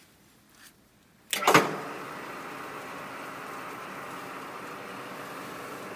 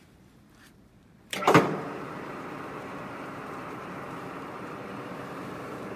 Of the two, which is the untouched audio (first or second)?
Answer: first